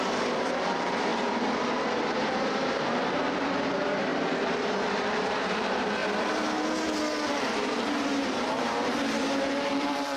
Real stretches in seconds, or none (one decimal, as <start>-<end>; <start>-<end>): 6.0-7.3